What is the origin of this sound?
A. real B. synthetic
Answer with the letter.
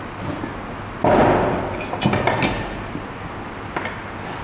A